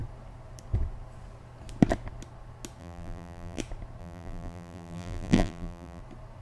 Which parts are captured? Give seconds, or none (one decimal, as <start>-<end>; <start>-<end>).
0.0-2.8; 3.6-4.0; 6.0-6.4